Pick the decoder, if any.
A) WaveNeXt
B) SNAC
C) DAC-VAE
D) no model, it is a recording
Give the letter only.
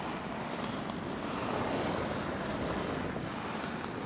D